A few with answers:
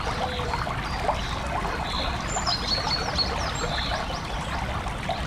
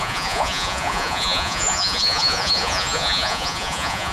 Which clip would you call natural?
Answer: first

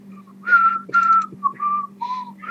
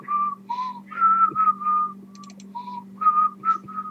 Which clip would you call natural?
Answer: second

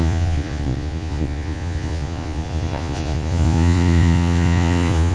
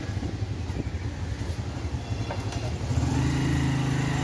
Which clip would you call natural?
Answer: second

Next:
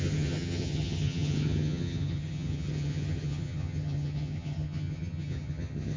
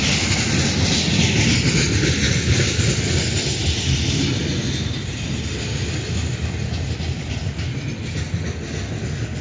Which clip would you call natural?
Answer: second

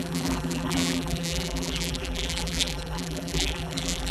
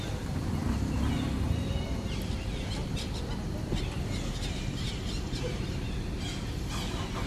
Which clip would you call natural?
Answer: second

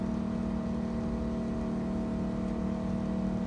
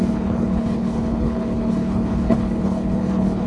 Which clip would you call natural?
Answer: first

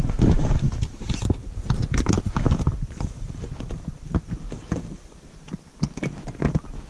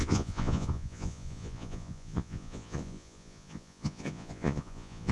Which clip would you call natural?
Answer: first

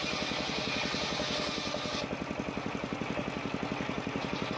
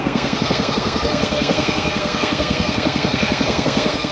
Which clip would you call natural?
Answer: first